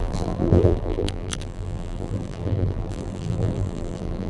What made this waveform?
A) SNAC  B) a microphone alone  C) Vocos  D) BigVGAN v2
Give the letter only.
D